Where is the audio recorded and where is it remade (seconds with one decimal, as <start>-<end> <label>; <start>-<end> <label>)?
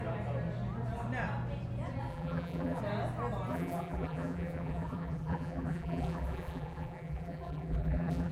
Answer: 0.0-2.1 recorded; 2.1-2.8 remade; 2.8-3.5 recorded; 3.5-8.3 remade